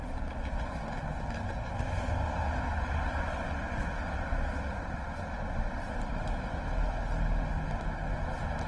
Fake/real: real